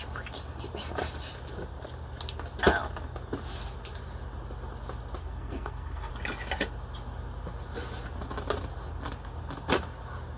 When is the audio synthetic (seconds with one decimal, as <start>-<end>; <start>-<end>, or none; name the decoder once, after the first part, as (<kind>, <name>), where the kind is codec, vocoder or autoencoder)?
5.2-6.1 (codec, SNAC)